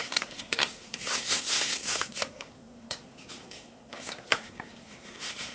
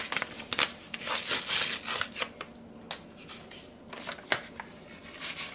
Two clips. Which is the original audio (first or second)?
second